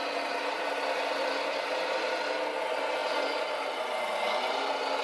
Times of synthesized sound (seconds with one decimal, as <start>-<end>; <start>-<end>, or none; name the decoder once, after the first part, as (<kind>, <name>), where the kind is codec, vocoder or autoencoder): none